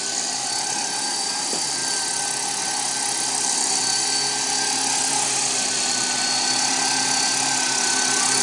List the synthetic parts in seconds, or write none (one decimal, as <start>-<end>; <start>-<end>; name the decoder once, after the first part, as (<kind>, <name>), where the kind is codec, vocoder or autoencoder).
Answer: none